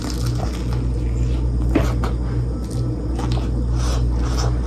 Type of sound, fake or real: real